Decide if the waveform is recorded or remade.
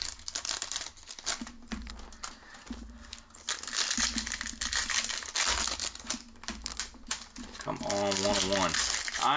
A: recorded